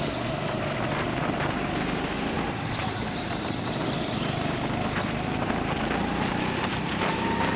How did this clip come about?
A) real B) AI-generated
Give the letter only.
A